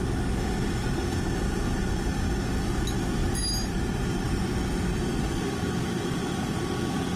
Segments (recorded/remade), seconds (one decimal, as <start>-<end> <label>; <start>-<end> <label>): 0.0-7.2 recorded